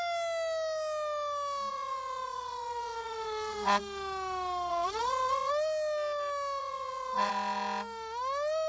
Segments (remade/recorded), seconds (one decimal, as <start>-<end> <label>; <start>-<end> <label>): 0.0-1.7 recorded; 1.7-3.8 remade; 3.8-4.7 recorded; 4.7-5.5 remade; 5.5-6.6 recorded; 6.6-7.3 remade; 7.3-8.7 recorded